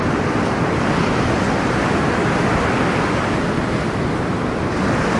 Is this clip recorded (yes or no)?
yes